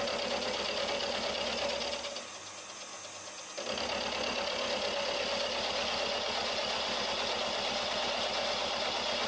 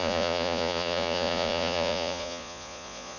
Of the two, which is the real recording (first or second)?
first